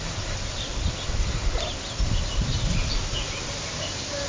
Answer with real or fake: real